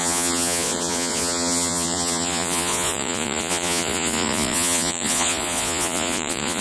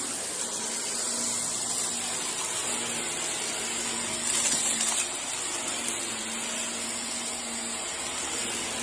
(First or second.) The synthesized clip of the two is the first